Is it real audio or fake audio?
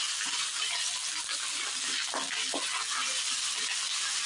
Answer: real